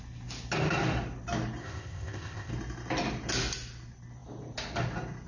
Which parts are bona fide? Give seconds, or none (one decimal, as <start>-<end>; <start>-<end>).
0.0-1.6; 2.5-5.3